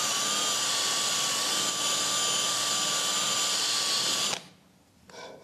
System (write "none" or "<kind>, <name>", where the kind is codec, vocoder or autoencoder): none